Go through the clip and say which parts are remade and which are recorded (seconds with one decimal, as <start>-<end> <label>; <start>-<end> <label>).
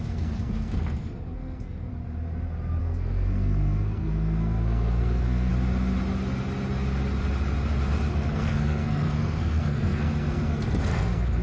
0.0-1.9 remade; 1.9-2.8 recorded; 2.8-5.5 remade; 5.5-8.1 recorded; 8.1-11.4 remade